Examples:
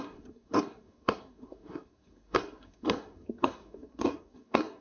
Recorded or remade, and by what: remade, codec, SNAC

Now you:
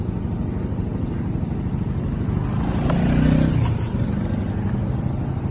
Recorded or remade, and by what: recorded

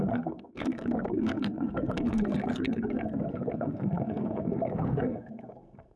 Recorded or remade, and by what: remade, codec, SNAC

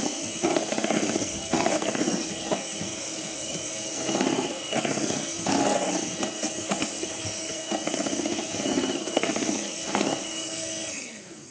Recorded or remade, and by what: remade, codec, SNAC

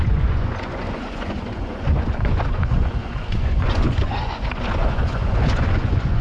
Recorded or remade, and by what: remade, vocoder, Vocos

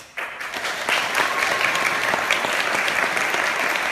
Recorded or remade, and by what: recorded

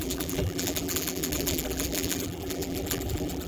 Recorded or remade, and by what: remade, vocoder, BigVGAN v2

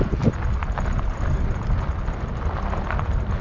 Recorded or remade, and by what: recorded